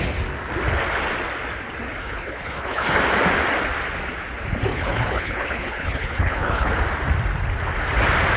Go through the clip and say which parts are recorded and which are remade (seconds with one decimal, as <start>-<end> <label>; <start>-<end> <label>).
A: 0.0-2.0 recorded; 2.0-2.9 remade; 2.9-4.7 recorded; 4.7-6.7 remade; 6.7-8.4 recorded